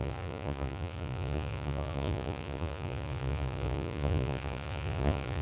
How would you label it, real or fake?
fake